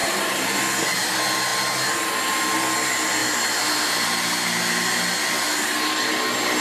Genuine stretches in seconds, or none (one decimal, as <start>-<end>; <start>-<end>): 0.6-6.6